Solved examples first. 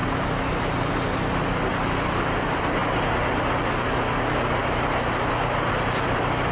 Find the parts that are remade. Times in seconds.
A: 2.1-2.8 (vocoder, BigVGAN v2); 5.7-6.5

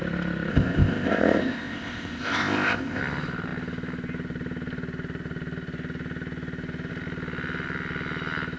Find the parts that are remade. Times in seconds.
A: 0.5-3.0 (codec, ZipCodec)

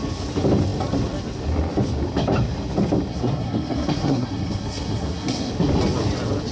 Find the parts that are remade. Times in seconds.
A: 3.1-5.5 (codec, SNAC)

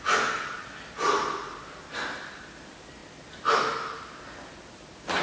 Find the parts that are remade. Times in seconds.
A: none

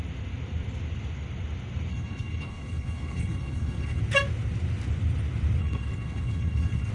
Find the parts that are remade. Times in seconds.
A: 1.9-4.0 (codec, HILCodec); 5.6-6.9

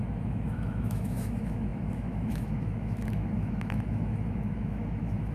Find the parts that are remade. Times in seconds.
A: 0.0-5.3 (autoencoder, DAC-VAE)

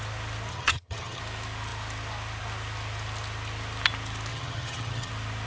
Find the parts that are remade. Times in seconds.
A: 0.5-1.2 (vocoder, HiFi-GAN); 4.3-5.1

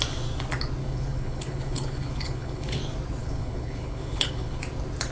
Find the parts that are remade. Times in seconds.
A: 0.8-2.8 (codec, HILCodec); 3.2-4.6